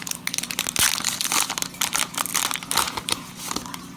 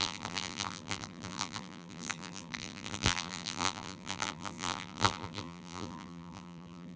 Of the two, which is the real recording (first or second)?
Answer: first